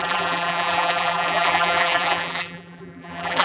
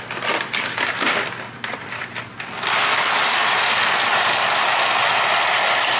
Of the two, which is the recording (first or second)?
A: second